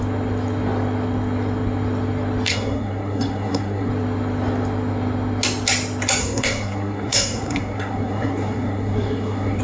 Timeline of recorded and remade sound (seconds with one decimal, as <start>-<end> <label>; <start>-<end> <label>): 0.0-2.5 recorded; 2.5-3.9 remade; 3.9-6.2 recorded; 6.2-9.6 remade